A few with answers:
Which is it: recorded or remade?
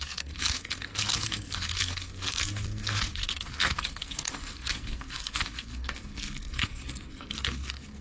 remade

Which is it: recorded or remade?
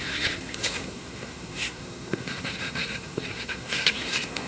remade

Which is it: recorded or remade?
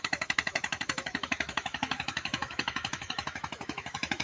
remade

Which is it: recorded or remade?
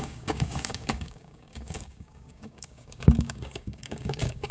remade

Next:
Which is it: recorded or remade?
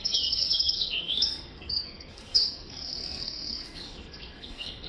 remade